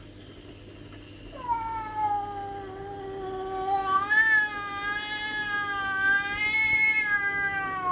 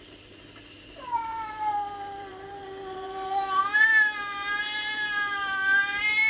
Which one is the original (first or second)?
first